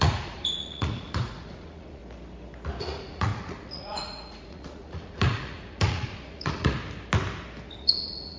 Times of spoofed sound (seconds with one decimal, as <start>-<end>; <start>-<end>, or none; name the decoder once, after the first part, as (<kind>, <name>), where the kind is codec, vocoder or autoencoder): 0.0-2.0 (vocoder, Vocos); 2.8-6.8; 7.7-8.4